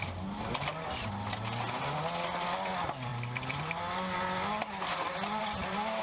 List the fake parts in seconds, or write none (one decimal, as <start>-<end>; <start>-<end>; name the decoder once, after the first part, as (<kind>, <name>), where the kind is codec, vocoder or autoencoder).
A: none